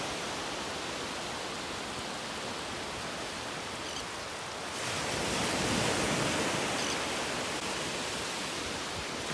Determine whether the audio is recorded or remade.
recorded